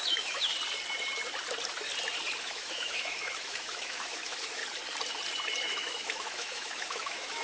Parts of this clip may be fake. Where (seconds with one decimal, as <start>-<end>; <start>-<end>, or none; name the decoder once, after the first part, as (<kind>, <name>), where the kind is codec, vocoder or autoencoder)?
0.0-0.5 (autoencoder, DAC-VAE); 2.4-4.6; 5.6-7.4